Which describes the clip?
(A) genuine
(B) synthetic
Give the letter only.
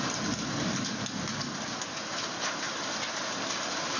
A